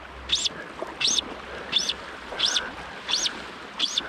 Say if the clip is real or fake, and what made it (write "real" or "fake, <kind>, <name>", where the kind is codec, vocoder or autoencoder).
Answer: real